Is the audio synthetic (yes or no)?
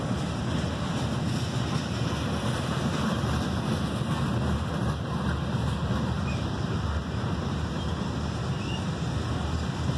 no